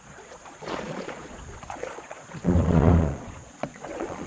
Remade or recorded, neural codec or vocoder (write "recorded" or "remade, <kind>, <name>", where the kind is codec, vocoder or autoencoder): remade, vocoder, Vocos